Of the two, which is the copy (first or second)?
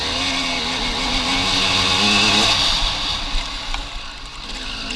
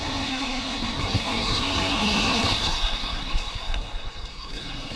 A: second